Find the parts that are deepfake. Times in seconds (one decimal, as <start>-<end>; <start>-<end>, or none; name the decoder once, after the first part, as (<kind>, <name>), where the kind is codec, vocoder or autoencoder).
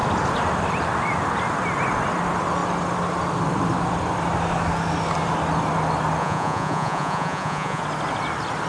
6.2-7.8 (vocoder, Vocos)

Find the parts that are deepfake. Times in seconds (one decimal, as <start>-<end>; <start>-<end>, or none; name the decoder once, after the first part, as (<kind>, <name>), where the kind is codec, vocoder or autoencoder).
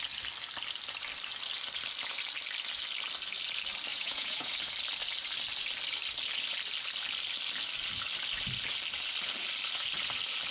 3.9-4.5 (vocoder, Vocos)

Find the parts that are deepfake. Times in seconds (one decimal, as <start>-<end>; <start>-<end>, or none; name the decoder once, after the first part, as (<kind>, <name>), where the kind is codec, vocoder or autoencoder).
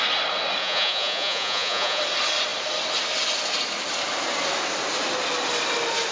0.6-2.0 (vocoder, Vocos)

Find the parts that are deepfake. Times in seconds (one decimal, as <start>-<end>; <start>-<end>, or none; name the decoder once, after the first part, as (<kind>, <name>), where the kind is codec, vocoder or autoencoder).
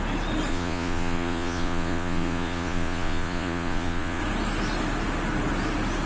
0.5-4.2 (vocoder, Vocos)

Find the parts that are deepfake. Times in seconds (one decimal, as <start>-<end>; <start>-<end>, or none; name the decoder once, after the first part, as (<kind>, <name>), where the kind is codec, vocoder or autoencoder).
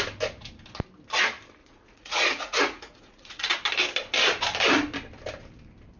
1.6-3.5 (vocoder, Vocos)